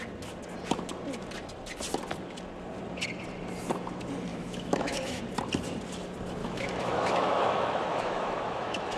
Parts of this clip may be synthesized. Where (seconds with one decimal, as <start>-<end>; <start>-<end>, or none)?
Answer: 4.3-5.2; 6.4-9.0